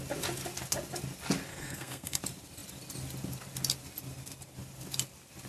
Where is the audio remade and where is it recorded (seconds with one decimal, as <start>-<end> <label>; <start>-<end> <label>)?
0.0-1.5 recorded; 1.5-2.2 remade; 2.2-5.5 recorded